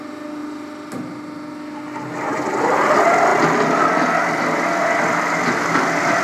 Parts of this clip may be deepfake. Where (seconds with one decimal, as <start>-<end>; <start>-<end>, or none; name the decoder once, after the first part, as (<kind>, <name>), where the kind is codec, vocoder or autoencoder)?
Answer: none